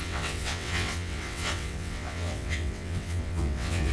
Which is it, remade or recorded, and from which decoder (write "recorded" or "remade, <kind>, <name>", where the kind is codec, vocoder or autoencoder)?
remade, vocoder, WaveNeXt